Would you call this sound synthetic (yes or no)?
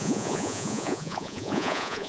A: yes